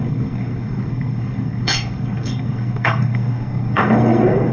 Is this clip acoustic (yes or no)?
no